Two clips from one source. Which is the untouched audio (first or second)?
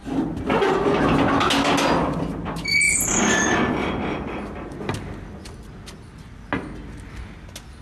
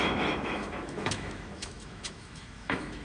first